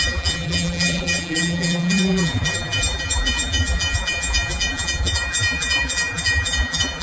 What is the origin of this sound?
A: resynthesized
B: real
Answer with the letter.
A